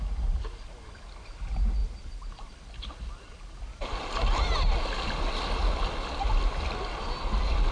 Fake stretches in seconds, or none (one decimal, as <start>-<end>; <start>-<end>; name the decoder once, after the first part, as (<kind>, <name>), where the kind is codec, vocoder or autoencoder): none